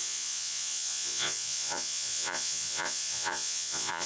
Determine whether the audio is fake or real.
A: fake